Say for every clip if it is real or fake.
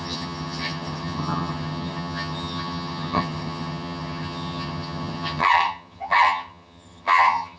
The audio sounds fake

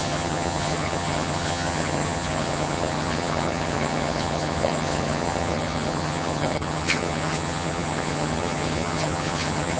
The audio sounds fake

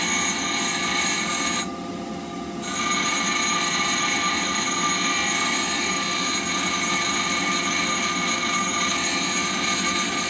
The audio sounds real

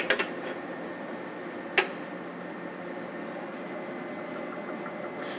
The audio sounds real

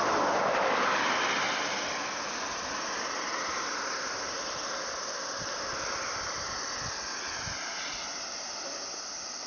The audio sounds real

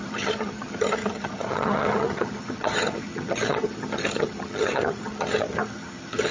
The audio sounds fake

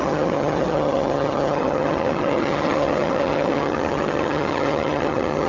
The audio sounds fake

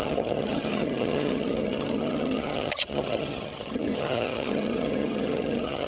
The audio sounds fake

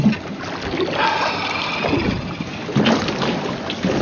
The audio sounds real